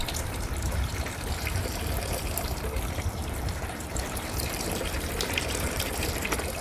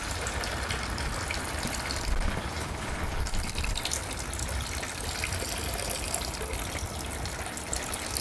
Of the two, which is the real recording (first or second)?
second